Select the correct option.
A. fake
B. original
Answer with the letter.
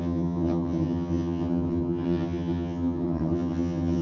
A